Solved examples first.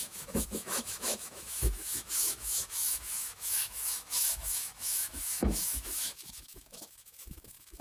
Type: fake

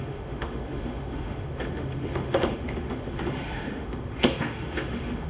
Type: fake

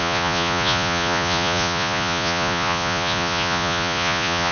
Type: fake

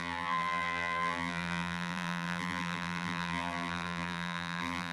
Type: fake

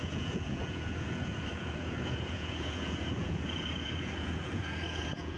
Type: fake